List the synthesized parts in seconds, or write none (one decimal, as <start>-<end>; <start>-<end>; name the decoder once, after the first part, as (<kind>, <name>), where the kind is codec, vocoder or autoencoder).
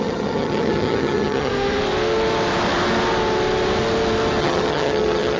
0.0-1.5 (vocoder, HiFi-GAN); 4.4-5.4